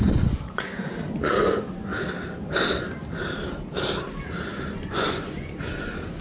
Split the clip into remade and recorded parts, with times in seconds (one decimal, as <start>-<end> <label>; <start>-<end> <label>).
0.0-1.9 remade; 1.9-4.7 recorded; 4.7-6.2 remade